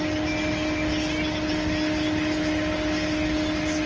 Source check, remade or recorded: recorded